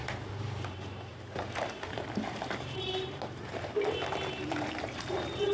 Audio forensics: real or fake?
fake